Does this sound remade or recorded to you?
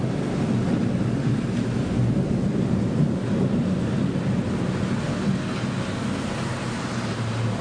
recorded